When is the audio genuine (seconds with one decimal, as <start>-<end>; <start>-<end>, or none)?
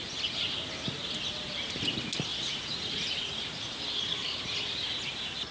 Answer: 0.0-2.3; 3.8-5.5